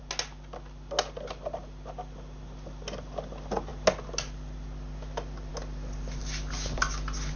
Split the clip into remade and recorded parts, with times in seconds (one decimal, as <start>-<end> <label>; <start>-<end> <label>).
0.0-7.4 recorded